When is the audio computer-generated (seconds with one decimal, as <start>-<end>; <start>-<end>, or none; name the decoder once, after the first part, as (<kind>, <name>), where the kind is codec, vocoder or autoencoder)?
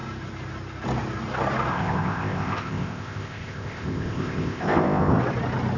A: 1.7-5.2 (codec, ZipCodec)